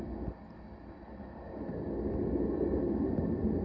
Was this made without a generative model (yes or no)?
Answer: yes